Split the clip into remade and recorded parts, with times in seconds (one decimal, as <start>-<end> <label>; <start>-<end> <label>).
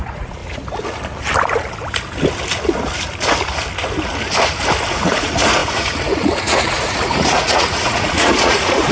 0.0-0.4 remade; 0.4-4.9 recorded; 4.9-8.9 remade